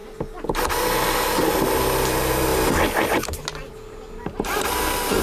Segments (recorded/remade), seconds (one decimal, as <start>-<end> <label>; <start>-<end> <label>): 0.0-5.2 recorded